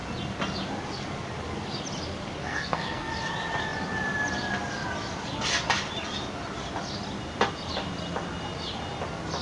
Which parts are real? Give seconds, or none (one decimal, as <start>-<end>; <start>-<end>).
0.0-2.4; 3.1-9.4